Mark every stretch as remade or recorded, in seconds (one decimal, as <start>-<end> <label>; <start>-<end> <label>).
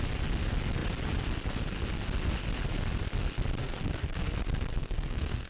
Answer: 0.0-3.6 recorded; 3.6-4.3 remade; 4.3-4.8 recorded; 4.8-5.5 remade